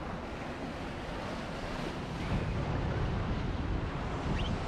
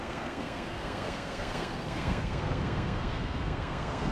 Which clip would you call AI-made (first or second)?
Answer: second